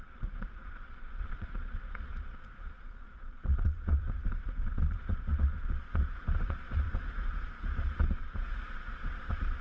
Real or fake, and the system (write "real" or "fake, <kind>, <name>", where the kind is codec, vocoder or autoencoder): fake, vocoder, Vocos